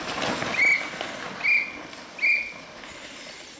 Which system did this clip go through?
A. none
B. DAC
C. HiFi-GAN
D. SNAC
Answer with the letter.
A